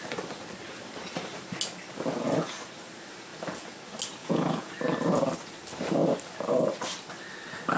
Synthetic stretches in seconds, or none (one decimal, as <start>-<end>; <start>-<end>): 4.2-4.7